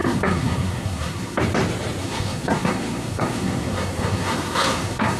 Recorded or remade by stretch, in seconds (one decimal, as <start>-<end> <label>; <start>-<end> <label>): 0.0-1.4 remade; 1.4-2.0 recorded; 2.0-5.2 remade